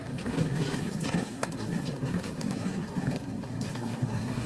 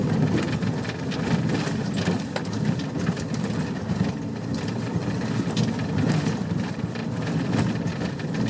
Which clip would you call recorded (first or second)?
second